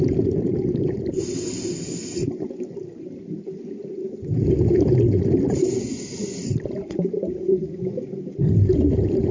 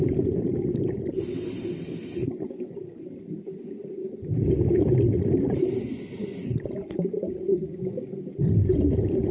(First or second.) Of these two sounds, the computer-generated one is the second